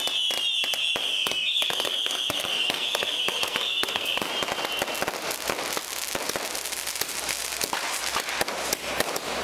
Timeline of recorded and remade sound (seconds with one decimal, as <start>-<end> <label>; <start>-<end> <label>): 0.0-1.0 recorded; 1.0-4.3 remade; 4.3-9.4 recorded